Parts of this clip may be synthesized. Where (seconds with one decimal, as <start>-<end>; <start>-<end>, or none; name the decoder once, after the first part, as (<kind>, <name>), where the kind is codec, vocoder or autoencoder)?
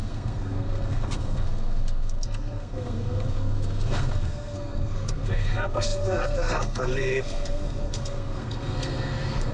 0.0-9.5 (codec, SNAC)